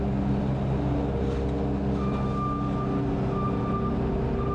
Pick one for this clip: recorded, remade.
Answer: recorded